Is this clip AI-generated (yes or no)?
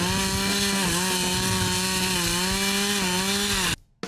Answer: no